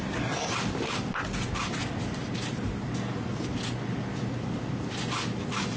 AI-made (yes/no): no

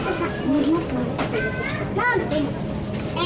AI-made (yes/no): no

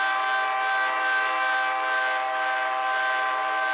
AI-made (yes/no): no